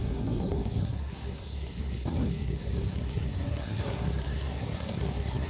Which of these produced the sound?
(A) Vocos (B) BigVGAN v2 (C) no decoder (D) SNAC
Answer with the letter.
D